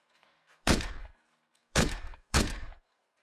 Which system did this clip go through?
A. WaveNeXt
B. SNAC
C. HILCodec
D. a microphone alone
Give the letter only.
B